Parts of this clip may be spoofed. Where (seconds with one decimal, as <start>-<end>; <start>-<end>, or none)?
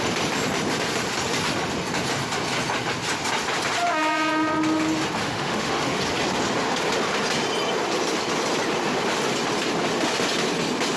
5.2-6.0